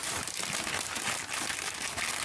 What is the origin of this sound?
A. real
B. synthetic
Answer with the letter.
A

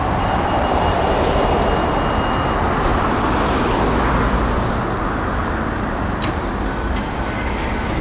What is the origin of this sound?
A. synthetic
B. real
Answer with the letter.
B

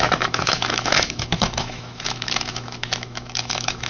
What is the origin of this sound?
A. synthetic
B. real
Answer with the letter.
A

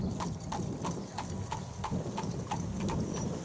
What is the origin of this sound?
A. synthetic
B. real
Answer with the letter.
B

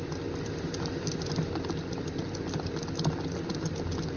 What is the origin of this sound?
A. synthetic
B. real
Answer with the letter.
B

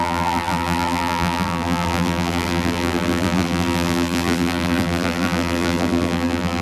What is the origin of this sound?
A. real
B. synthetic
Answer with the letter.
B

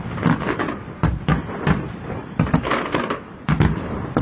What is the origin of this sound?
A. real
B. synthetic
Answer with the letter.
A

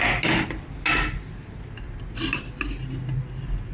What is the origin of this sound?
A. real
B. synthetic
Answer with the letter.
A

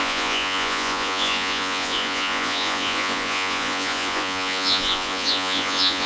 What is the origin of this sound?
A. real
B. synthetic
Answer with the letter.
B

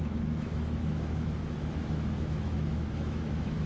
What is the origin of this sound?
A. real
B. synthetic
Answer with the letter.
B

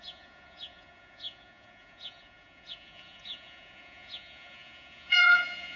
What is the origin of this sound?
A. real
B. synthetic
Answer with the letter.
B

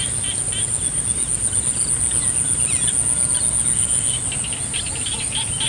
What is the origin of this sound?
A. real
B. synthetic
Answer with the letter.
A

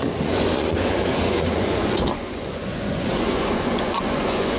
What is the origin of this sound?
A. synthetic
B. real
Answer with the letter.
A